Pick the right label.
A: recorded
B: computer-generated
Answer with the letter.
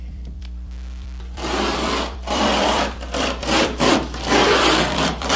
B